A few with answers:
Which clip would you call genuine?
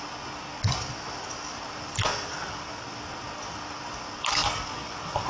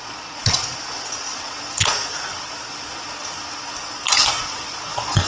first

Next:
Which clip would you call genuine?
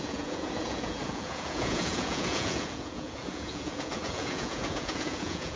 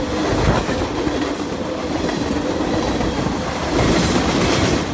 second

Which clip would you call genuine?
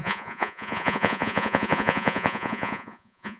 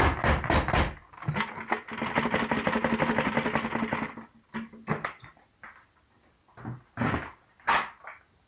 second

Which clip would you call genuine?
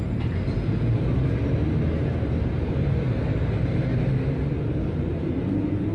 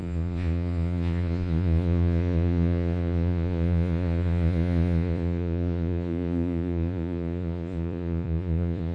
first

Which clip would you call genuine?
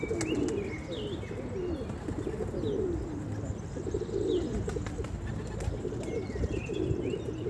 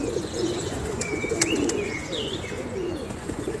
first